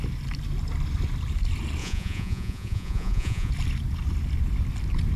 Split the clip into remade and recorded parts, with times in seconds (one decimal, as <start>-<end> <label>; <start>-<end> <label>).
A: 0.0-1.8 recorded; 1.8-3.5 remade; 3.5-5.2 recorded